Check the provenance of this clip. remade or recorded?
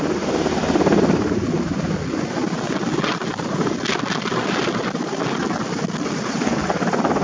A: recorded